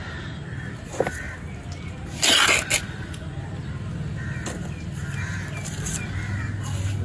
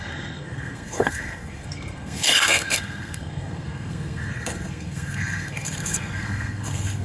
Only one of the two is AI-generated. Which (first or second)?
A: second